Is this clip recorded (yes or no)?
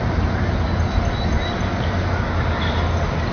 yes